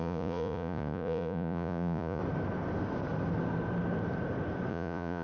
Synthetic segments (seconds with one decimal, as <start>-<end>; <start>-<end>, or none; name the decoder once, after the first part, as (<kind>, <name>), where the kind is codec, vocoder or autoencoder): 0.0-2.2 (vocoder, Vocos); 4.7-5.2

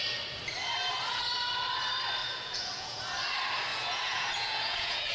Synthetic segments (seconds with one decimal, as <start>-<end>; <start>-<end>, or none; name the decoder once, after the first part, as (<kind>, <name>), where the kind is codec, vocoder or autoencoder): 2.2-3.0 (vocoder, Vocos); 3.7-5.1

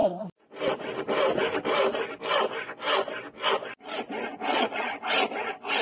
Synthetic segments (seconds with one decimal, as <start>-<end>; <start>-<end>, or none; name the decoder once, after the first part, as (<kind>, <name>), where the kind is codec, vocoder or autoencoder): 4.5-5.0 (vocoder, Vocos)

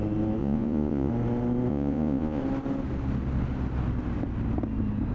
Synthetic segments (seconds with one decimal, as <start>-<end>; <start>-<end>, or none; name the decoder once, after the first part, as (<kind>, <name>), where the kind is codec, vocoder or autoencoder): 0.4-1.1 (vocoder, Vocos); 1.7-2.4